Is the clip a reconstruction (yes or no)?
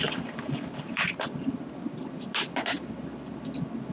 no